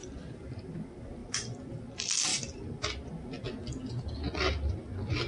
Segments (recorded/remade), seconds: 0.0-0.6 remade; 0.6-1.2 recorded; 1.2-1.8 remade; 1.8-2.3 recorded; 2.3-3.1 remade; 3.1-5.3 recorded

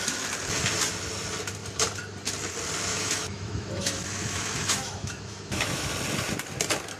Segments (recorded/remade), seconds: 0.0-2.9 recorded; 2.9-5.9 remade; 5.9-7.0 recorded

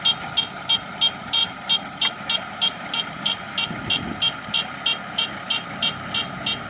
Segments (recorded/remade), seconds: 0.0-6.7 recorded

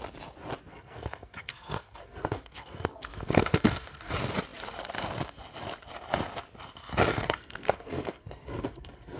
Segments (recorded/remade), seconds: 0.0-0.7 recorded; 0.7-4.1 remade; 4.1-7.1 recorded; 7.1-9.2 remade

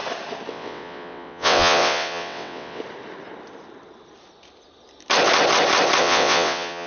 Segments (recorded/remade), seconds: 0.0-0.5 recorded; 0.5-2.8 remade; 2.8-6.0 recorded; 6.0-6.9 remade

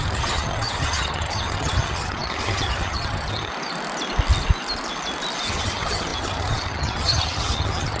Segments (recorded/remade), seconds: 0.0-3.5 remade; 3.5-5.5 recorded; 5.5-8.0 remade

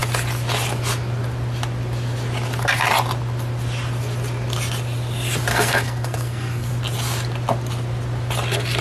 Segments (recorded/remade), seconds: 0.0-5.5 recorded; 5.5-6.7 remade; 6.7-8.8 recorded